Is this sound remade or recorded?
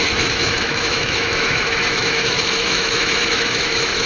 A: remade